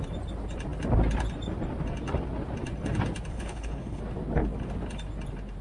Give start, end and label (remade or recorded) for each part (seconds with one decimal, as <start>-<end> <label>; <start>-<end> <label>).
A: 0.0-3.3 recorded; 3.3-4.0 remade; 4.0-5.6 recorded